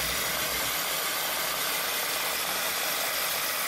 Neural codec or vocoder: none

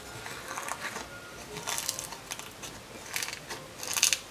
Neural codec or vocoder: none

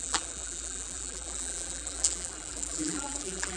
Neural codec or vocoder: vocoder, BigVGAN v2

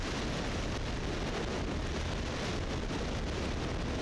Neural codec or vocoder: none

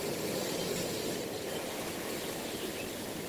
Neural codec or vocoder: none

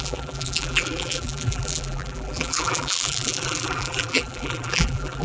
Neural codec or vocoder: vocoder, BigVGAN v2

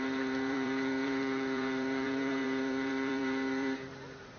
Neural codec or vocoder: vocoder, BigVGAN v2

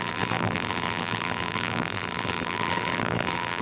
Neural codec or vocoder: vocoder, BigVGAN v2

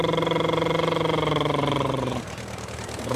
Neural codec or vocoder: vocoder, BigVGAN v2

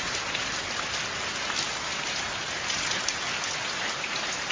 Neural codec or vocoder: none